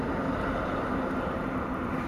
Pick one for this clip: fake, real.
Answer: real